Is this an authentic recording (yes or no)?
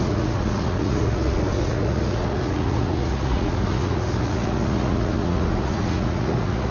no